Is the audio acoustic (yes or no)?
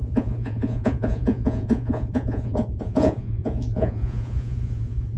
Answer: no